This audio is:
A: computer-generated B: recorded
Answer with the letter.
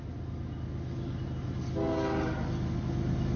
B